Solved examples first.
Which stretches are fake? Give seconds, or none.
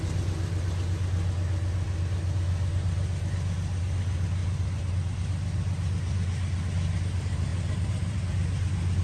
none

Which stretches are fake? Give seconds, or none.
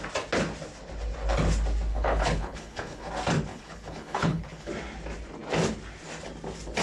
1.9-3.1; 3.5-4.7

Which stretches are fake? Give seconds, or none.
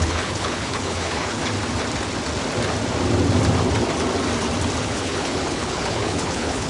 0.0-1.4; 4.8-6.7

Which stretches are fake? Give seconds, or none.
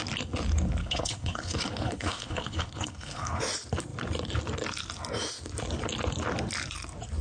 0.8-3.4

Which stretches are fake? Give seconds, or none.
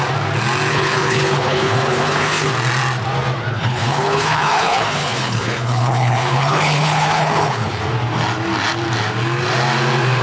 0.7-2.5; 3.5-7.8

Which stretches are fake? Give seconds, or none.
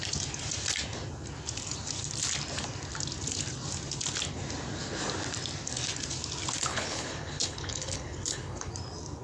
6.7-8.7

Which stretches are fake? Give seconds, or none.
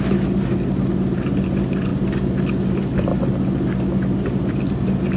none